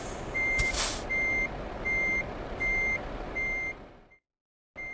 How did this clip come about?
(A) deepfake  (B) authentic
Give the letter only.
B